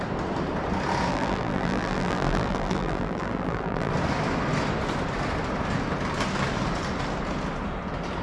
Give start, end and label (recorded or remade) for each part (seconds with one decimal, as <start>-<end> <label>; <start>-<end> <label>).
0.0-1.1 recorded; 1.1-3.9 remade; 3.9-8.2 recorded